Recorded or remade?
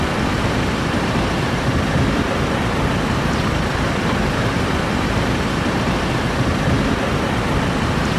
remade